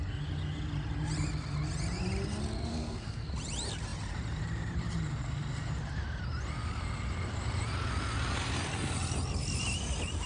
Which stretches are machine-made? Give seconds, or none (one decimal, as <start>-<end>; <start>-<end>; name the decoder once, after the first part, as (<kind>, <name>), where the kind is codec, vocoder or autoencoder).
2.7-3.3 (codec, SNAC)

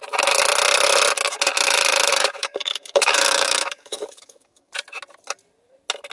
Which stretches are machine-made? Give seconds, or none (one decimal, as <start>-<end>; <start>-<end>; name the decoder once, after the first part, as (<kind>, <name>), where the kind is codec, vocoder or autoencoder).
2.1-4.7 (codec, DAC)